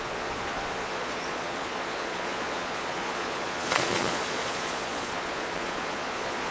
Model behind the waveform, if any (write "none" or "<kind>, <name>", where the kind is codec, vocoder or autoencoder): vocoder, Vocos